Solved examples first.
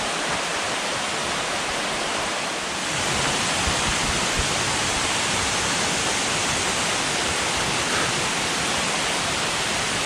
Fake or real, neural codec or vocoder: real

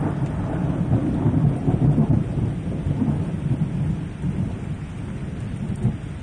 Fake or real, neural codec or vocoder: real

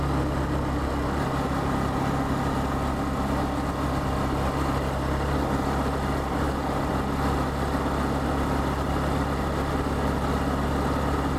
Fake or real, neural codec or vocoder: real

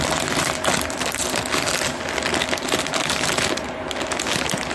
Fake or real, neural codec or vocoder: real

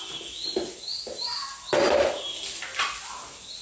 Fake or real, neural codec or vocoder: real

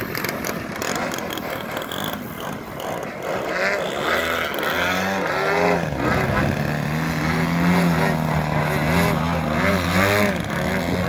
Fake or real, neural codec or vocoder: real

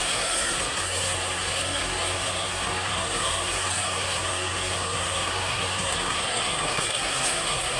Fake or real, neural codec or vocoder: fake, codec, SNAC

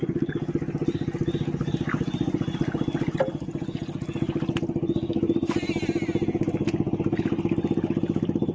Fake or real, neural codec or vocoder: real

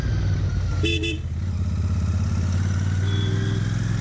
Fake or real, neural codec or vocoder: real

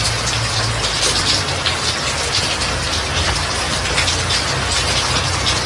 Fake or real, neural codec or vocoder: real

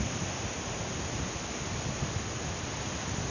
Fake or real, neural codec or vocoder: real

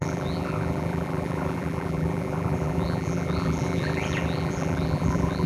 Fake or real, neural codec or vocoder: fake, vocoder, BigVGAN v2